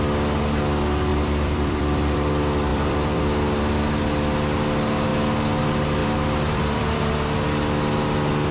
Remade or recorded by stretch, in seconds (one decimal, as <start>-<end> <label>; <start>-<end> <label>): 0.0-1.1 recorded; 1.1-2.3 remade; 2.3-2.7 recorded; 2.7-3.2 remade; 3.2-6.0 recorded; 6.0-7.1 remade; 7.1-8.5 recorded